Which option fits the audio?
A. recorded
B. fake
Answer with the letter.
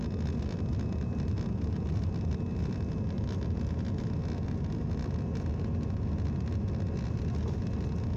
A